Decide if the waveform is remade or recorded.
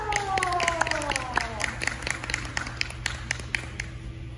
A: recorded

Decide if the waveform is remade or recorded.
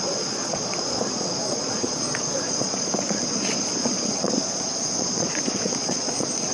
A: remade